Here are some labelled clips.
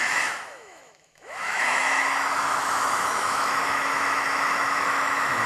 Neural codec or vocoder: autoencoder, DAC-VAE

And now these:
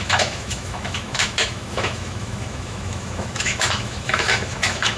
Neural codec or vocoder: autoencoder, DAC-VAE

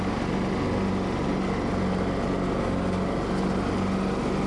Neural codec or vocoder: none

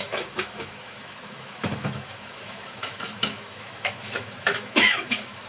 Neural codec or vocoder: autoencoder, DAC-VAE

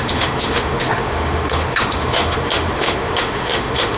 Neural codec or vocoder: autoencoder, DAC-VAE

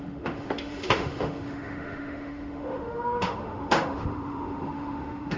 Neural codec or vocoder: autoencoder, DAC-VAE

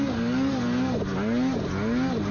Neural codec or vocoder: none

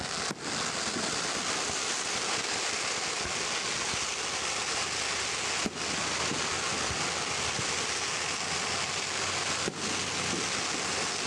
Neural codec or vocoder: none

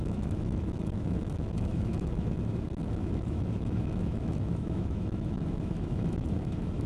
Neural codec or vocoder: autoencoder, DAC-VAE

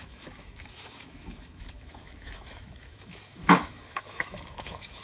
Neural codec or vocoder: autoencoder, DAC-VAE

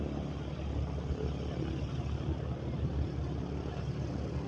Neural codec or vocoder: none